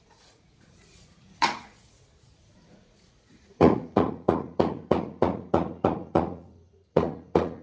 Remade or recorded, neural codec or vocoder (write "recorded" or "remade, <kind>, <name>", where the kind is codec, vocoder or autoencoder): remade, vocoder, Vocos